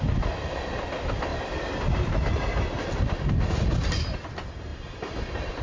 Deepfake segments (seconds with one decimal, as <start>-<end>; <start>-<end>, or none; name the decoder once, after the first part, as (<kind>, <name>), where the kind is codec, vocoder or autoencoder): 4.7-5.6 (vocoder, BigVGAN v2)